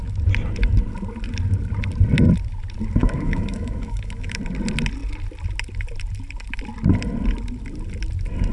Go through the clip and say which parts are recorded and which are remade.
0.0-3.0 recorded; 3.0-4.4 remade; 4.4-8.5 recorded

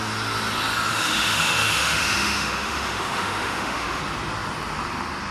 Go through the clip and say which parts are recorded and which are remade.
0.0-0.9 recorded; 0.9-4.0 remade; 4.0-5.3 recorded

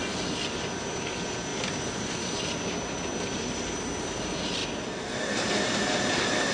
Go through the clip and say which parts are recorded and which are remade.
0.0-6.5 recorded

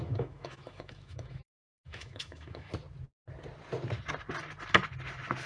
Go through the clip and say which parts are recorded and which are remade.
0.0-2.7 remade; 2.7-5.5 recorded